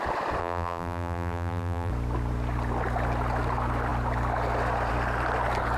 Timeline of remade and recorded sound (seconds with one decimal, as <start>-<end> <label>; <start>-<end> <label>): 0.0-0.4 recorded; 0.4-1.9 remade; 1.9-5.8 recorded